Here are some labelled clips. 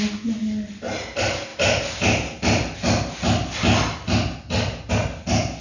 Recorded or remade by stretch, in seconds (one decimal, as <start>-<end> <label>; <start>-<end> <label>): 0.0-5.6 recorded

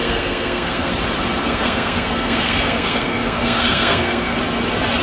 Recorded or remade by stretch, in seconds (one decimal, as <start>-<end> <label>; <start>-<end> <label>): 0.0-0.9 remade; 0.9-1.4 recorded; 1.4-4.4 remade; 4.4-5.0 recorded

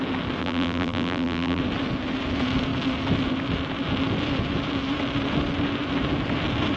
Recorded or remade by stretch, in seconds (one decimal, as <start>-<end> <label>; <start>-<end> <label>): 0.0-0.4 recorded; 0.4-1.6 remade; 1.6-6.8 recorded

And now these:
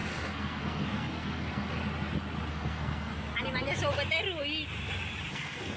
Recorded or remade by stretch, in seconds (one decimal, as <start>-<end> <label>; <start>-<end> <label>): 0.0-1.8 remade; 1.8-2.5 recorded; 2.5-3.1 remade; 3.1-5.3 recorded; 5.3-5.8 remade